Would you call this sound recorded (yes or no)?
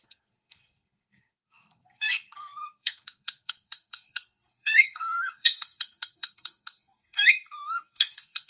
no